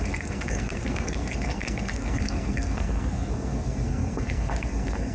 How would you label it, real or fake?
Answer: fake